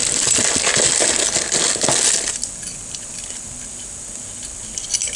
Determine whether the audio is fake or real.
real